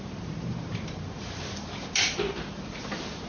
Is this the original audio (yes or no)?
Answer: no